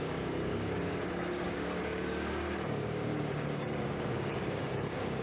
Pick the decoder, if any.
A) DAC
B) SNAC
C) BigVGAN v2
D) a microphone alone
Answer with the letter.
A